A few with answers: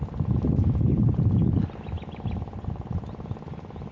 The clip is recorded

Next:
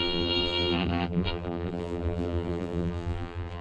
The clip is remade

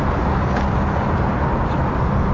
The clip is recorded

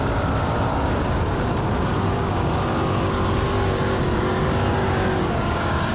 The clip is remade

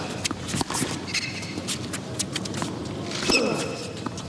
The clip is recorded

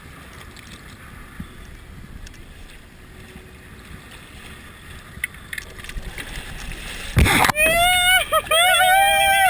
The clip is recorded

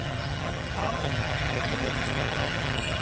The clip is remade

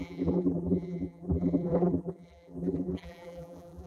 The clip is remade